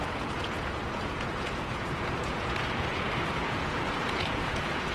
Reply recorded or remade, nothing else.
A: remade